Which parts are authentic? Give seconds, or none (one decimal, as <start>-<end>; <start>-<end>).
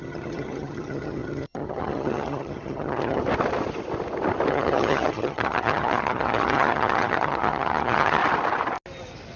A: 3.2-4.5; 8.2-9.4